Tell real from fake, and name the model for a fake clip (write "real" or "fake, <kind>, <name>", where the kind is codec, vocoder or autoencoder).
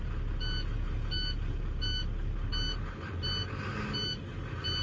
real